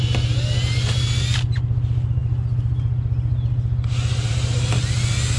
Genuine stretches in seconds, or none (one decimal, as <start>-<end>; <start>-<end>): 0.0-5.4

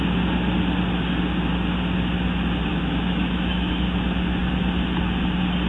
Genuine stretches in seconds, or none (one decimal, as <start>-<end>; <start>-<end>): 0.0-2.7; 3.7-5.7

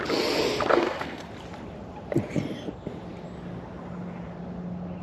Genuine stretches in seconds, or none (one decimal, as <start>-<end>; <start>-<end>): 0.0-0.7; 1.3-5.0

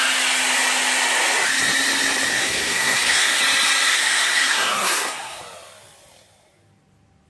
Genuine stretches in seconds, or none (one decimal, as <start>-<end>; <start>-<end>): 0.0-2.3; 3.4-3.9; 5.4-7.3

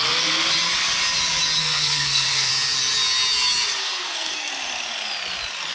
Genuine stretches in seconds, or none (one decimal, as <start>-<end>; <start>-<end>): 0.0-1.6; 2.5-3.8; 4.5-5.7

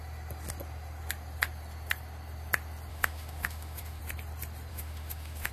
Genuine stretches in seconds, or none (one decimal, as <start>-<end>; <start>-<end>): 0.0-2.9; 4.0-4.7